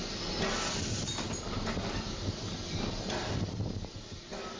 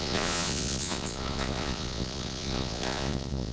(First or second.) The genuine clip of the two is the first